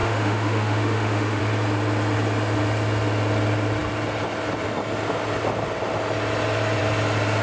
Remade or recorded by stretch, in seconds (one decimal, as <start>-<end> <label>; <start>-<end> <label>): 0.0-1.4 remade; 1.4-7.4 recorded